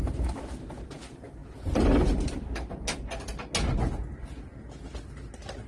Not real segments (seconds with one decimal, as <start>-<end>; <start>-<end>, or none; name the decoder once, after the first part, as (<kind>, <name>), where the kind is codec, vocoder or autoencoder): none